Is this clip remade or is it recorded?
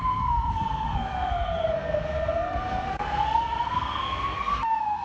remade